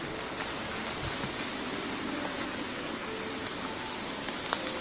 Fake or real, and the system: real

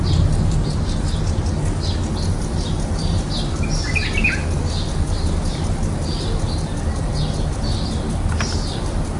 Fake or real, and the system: real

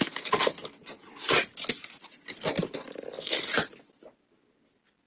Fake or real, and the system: real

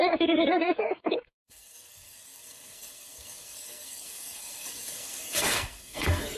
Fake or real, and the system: fake, codec, SNAC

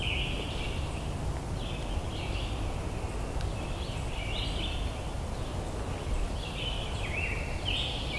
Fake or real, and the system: real